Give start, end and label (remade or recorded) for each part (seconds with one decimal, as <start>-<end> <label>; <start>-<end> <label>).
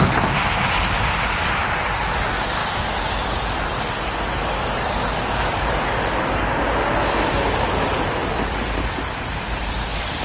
0.0-2.6 recorded; 2.6-6.9 remade; 6.9-8.2 recorded; 8.2-8.9 remade; 8.9-10.2 recorded